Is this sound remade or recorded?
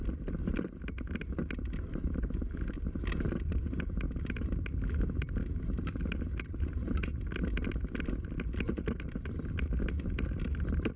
recorded